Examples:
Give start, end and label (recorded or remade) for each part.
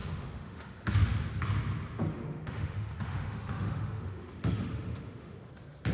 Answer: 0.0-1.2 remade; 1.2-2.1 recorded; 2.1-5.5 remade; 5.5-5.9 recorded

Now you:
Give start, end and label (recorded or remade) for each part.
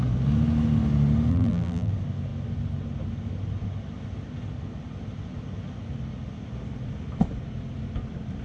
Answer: 0.0-1.3 recorded; 1.3-1.9 remade; 1.9-8.4 recorded